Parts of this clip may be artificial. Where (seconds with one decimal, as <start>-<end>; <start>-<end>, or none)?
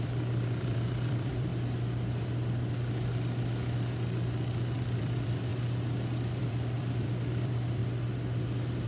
0.0-1.5; 5.0-5.5; 6.4-7.8